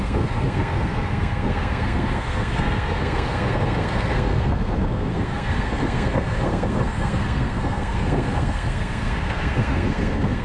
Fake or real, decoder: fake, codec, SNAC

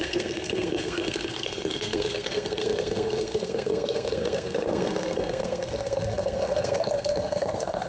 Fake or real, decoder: fake, codec, SNAC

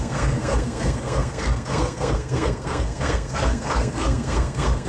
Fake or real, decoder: fake, codec, SNAC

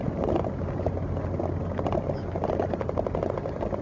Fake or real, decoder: real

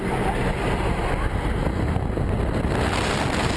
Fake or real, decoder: real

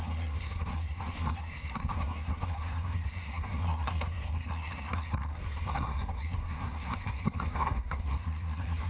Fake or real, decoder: fake, codec, SNAC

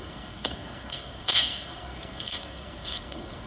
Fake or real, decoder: fake, codec, SNAC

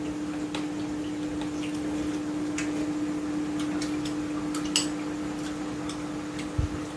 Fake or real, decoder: real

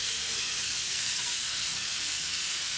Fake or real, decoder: fake, codec, SNAC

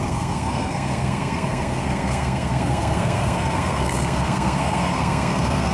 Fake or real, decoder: fake, codec, SNAC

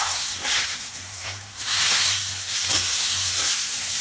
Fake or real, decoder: fake, codec, SNAC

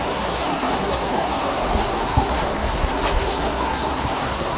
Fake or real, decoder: fake, codec, SNAC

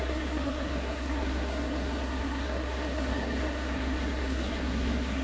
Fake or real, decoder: fake, codec, SNAC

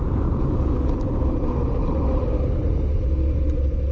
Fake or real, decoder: real